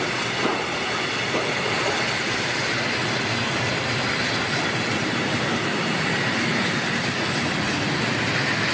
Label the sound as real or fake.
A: real